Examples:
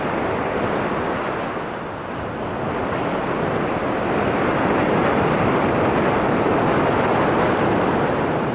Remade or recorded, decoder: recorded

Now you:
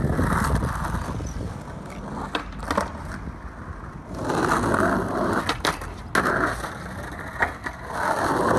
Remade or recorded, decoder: recorded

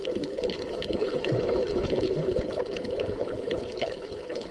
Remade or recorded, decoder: remade, codec, HILCodec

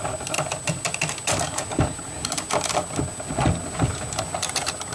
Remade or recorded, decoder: recorded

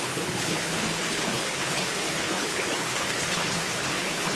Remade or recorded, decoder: remade, codec, HILCodec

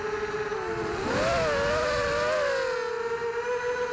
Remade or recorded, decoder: recorded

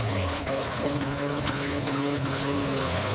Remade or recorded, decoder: remade, codec, HILCodec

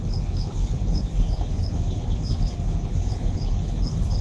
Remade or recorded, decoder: remade, codec, HILCodec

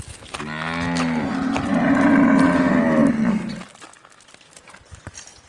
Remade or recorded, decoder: recorded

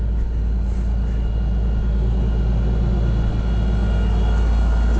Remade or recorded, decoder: recorded